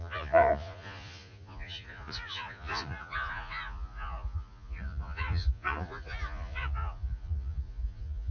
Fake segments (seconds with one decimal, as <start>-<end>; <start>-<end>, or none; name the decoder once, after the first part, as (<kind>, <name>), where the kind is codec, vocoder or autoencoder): 0.0-8.3 (vocoder, Vocos)